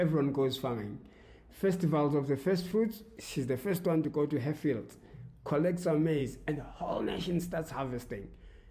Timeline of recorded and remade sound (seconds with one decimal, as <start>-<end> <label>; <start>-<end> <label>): 0.0-6.2 recorded; 6.2-7.0 remade; 7.0-8.7 recorded